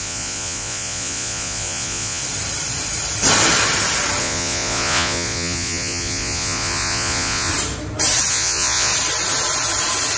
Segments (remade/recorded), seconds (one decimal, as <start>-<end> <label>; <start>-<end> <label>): 0.0-2.2 remade; 2.2-4.2 recorded; 4.2-7.5 remade; 7.5-8.3 recorded; 8.3-8.9 remade; 8.9-10.2 recorded